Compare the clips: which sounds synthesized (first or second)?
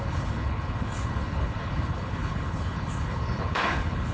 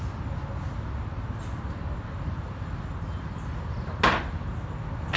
first